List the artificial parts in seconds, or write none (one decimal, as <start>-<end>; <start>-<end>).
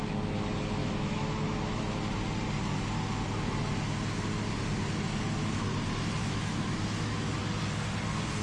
0.8-1.8; 6.2-7.4